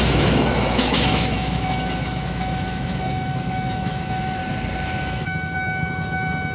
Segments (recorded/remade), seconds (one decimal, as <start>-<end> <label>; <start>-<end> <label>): 0.0-4.4 remade; 4.4-5.0 recorded; 5.0-6.5 remade